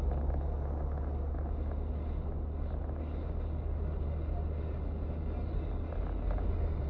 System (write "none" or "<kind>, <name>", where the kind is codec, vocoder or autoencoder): none